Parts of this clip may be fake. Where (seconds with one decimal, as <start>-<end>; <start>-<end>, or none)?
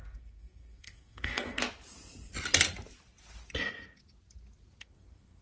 0.0-1.6; 4.8-5.4